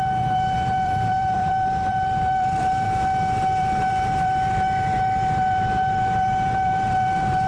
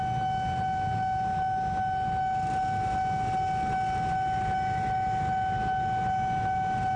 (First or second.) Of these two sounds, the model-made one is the first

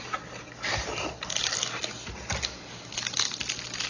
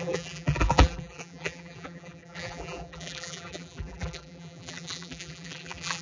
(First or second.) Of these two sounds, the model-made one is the second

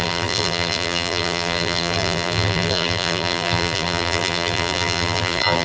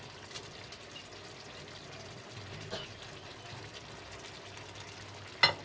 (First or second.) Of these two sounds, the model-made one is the first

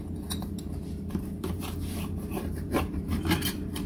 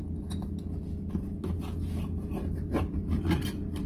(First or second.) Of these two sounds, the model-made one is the first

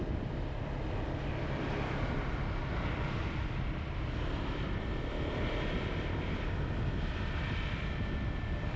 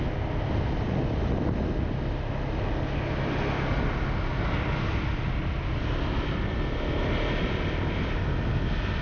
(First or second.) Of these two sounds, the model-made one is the first